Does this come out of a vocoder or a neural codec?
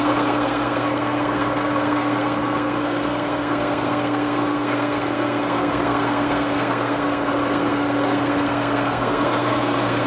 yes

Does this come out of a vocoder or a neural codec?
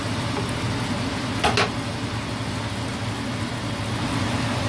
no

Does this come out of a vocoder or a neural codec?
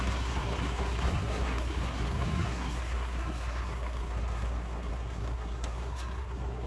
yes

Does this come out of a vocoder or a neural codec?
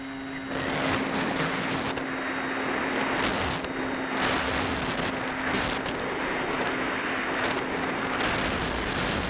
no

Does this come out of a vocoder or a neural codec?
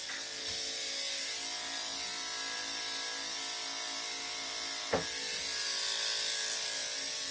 no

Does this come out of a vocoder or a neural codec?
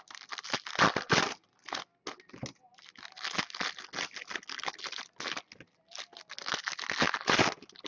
no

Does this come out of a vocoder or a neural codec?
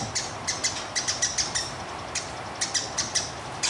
no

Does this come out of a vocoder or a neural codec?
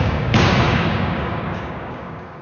yes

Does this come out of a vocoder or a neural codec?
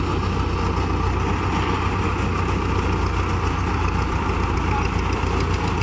no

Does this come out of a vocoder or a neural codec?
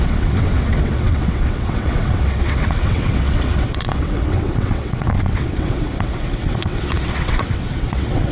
yes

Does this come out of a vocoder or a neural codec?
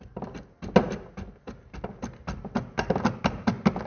no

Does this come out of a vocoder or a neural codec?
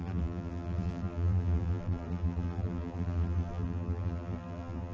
yes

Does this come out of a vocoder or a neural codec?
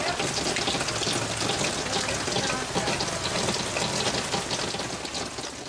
no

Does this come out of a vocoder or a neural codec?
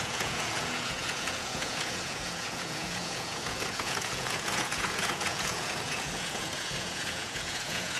yes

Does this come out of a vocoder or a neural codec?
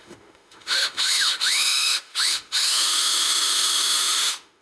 yes